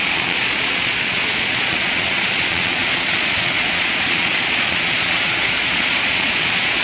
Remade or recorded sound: remade